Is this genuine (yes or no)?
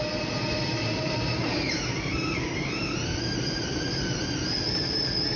yes